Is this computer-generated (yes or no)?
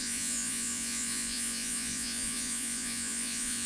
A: yes